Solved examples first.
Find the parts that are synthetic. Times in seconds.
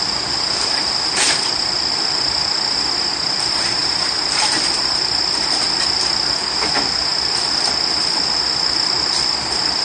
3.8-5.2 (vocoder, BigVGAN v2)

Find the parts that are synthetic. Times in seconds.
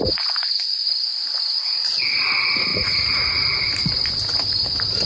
1.1-2.3 (vocoder, BigVGAN v2); 2.7-4.1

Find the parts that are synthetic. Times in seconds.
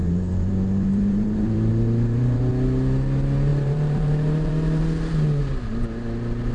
0.0-2.5 (vocoder, BigVGAN v2); 3.5-4.8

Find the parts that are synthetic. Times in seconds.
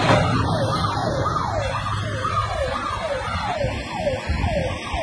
1.0-4.0 (vocoder, BigVGAN v2)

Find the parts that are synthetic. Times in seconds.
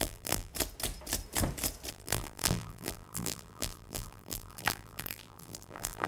0.0-0.5 (vocoder, BigVGAN v2); 1.9-6.1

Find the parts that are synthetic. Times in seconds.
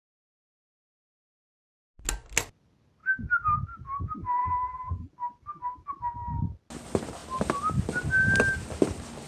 4.4-5.1 (vocoder, BigVGAN v2)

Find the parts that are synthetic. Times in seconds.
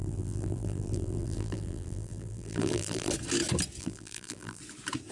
0.0-3.1 (vocoder, BigVGAN v2); 3.8-4.6